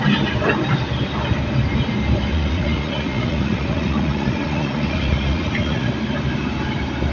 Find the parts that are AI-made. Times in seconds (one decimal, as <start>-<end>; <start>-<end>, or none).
2.3-5.9